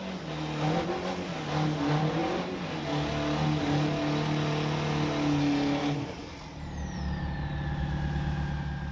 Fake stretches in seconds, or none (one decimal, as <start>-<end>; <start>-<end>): none